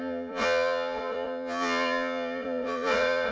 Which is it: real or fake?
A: fake